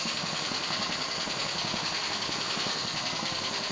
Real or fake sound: fake